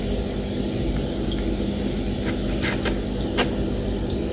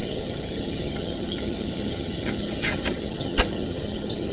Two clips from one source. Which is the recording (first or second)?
first